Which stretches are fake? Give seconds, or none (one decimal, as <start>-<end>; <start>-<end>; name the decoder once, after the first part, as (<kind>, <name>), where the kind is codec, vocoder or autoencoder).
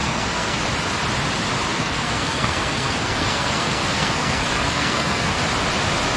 0.0-0.6 (codec, SNAC); 1.7-5.4